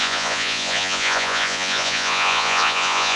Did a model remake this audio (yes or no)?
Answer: yes